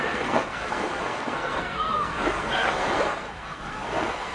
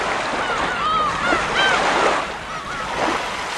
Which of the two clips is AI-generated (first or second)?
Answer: first